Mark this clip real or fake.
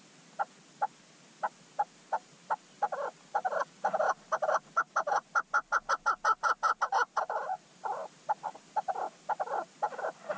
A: real